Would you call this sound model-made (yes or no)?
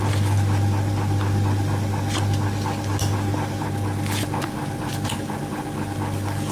no